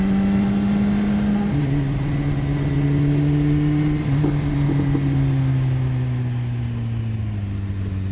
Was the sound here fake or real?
real